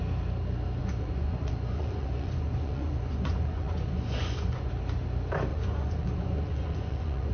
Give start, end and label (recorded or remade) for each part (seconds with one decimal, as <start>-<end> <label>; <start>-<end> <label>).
0.0-0.8 recorded; 0.8-4.7 remade; 4.7-5.5 recorded; 5.5-7.3 remade